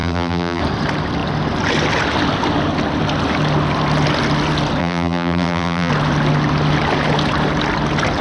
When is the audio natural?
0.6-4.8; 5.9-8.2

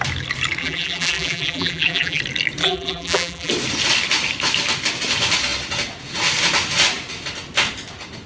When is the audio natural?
0.0-0.6; 2.2-2.6; 3.5-8.3

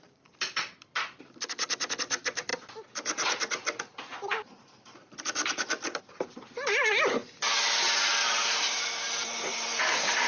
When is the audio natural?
9.2-9.9

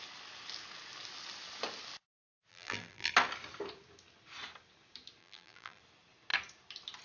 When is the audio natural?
0.0-2.5; 3.1-5.2; 5.8-7.0

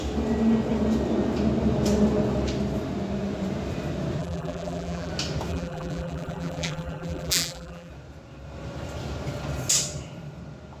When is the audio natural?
0.0-4.2; 5.1-5.5; 7.9-10.8

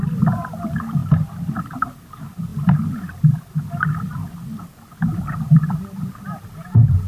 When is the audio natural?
1.0-1.6

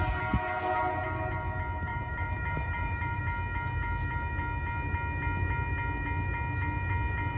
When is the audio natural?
0.0-1.9; 3.2-7.4